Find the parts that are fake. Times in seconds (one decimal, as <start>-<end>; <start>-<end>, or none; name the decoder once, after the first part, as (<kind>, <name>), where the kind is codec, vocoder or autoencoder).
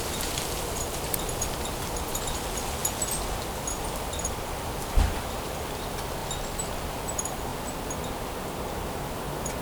0.0-2.8 (vocoder, BigVGAN v2); 4.2-6.2; 6.7-7.5; 9.2-9.6